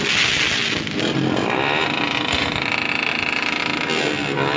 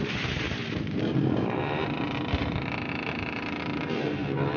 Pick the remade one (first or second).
second